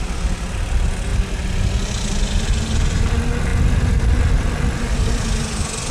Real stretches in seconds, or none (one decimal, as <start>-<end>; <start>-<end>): 0.0-5.9